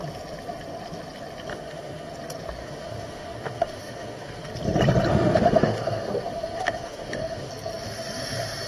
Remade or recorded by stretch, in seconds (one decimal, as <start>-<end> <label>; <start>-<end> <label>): 0.0-1.5 recorded; 1.5-2.1 remade; 2.1-2.6 recorded; 2.6-4.5 remade; 4.5-5.1 recorded; 5.1-7.5 remade; 7.5-8.7 recorded